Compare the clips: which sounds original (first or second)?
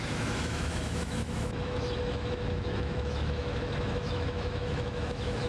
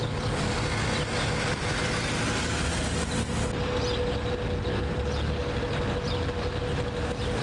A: second